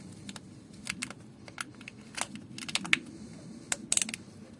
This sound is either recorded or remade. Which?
recorded